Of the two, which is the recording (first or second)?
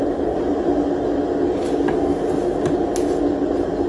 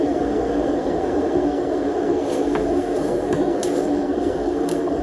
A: first